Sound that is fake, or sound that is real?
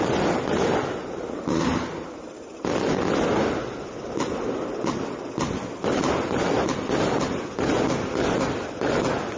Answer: real